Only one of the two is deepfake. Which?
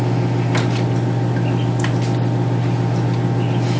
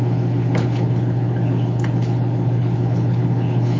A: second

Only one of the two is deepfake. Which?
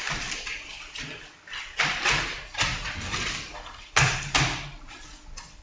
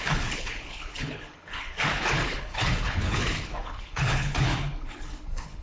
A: second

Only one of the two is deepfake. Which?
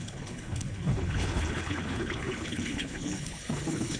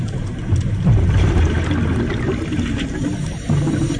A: first